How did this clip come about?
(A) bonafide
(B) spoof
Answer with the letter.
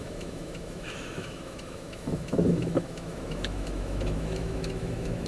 B